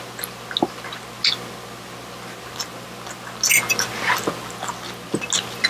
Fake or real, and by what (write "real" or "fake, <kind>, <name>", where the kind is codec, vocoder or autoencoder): real